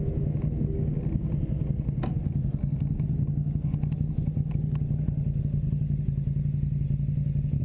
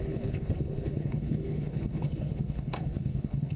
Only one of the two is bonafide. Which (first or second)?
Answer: first